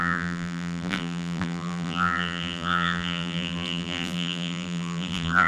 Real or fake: fake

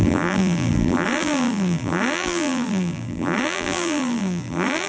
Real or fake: fake